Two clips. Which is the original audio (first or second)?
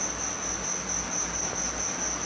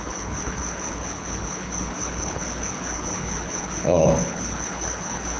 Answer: first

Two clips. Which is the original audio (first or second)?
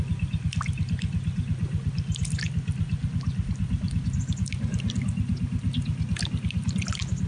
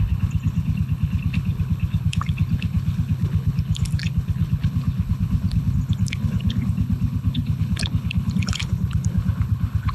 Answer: first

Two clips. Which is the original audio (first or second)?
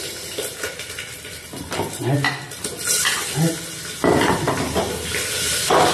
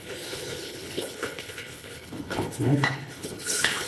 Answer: first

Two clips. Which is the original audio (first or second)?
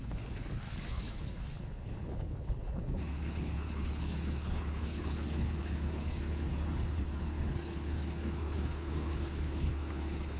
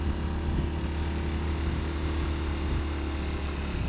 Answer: second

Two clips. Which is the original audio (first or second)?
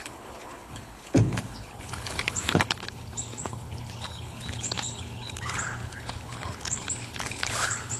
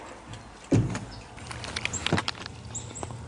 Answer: second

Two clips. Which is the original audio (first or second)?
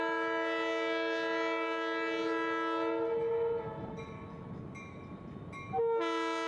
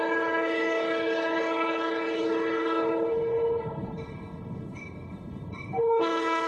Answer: first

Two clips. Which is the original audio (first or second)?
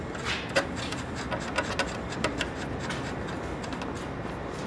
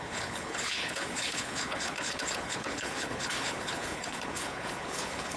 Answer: first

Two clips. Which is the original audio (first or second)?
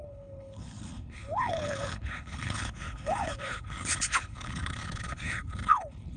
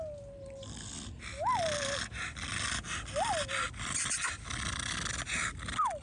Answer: second